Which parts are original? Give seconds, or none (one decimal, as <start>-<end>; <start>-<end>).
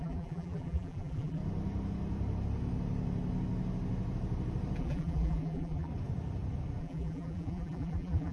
1.4-4.8; 5.9-6.8